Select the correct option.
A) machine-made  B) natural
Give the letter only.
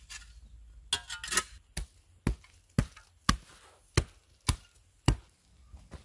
B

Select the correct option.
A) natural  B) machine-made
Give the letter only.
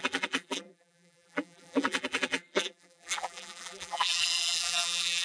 B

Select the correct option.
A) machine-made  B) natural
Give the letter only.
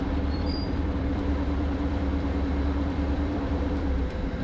A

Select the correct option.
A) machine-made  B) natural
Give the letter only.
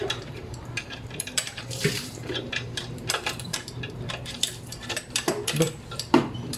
A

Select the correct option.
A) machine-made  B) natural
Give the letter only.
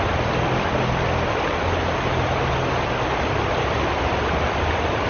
A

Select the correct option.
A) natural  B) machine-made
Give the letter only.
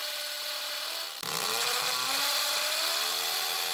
A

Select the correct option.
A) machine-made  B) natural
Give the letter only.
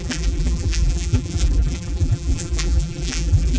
A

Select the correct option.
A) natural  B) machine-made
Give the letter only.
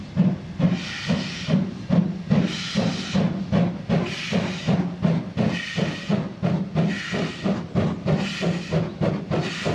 A